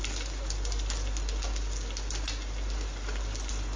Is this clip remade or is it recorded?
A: recorded